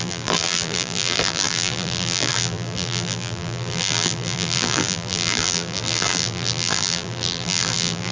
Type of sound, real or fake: fake